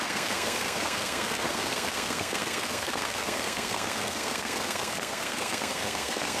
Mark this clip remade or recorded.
remade